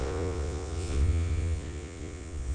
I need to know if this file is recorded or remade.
remade